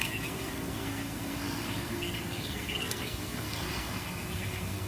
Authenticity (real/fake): fake